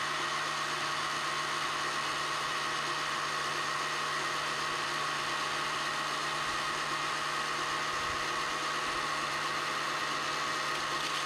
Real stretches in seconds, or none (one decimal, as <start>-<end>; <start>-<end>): 0.0-11.3